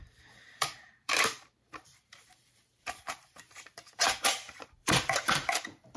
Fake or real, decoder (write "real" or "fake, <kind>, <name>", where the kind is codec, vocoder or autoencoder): fake, vocoder, BigVGAN v2